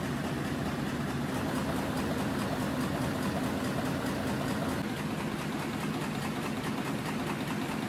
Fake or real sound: real